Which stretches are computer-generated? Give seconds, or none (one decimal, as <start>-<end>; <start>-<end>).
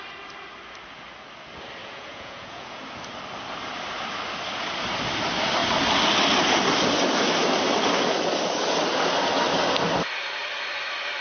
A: 1.8-2.8